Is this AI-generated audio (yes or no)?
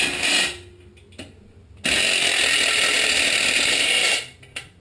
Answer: no